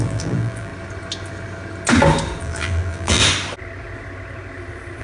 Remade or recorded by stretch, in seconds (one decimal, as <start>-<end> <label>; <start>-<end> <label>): 0.0-0.7 remade; 0.7-2.4 recorded; 2.4-3.2 remade; 3.2-5.0 recorded

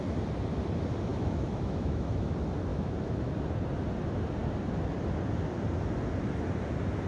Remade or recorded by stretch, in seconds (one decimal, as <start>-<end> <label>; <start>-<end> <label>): 0.0-1.1 recorded; 1.1-2.3 remade; 2.3-2.7 recorded; 2.7-3.3 remade; 3.3-7.1 recorded

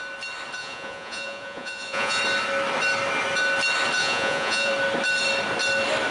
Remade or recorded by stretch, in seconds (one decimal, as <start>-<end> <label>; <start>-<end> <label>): 0.0-0.6 recorded; 0.6-2.2 remade; 2.2-4.0 recorded; 4.0-4.7 remade; 4.7-6.1 recorded

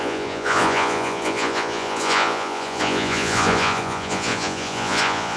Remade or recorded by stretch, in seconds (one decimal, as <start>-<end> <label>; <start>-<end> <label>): 0.0-5.4 remade

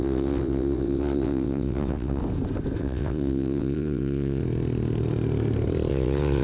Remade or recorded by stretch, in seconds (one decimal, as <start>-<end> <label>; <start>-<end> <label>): 0.0-2.2 remade; 2.2-2.8 recorded; 2.8-4.4 remade; 4.4-5.9 recorded; 5.9-6.4 remade

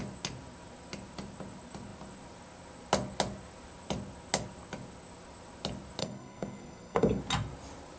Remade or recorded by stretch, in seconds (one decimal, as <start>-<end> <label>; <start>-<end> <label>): 0.0-6.0 recorded; 6.0-7.2 remade; 7.2-8.0 recorded